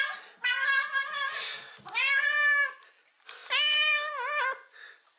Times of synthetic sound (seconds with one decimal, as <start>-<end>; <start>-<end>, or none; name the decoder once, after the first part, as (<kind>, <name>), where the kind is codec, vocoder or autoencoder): none